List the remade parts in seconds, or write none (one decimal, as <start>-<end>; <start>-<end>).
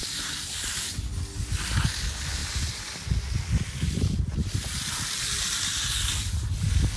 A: 0.0-0.8